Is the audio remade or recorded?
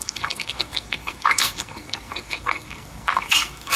remade